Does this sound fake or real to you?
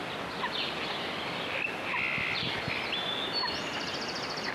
real